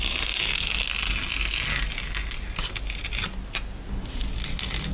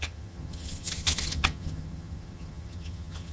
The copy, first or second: second